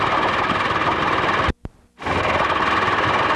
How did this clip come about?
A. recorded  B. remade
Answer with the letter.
A